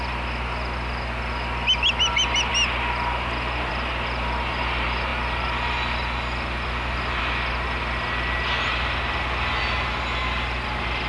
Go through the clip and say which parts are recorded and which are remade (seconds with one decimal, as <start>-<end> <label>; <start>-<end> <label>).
0.0-11.1 recorded